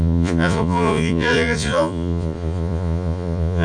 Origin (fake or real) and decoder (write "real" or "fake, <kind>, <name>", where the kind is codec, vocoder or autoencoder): fake, vocoder, Vocos